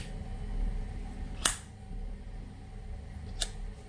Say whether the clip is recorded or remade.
recorded